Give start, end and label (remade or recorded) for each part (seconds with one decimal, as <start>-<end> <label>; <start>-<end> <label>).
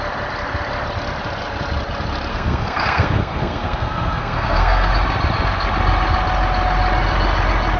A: 0.0-2.3 recorded; 2.3-4.9 remade; 4.9-7.8 recorded